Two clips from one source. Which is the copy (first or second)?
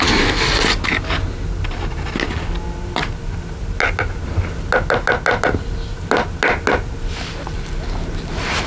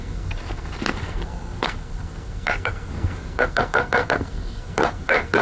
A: second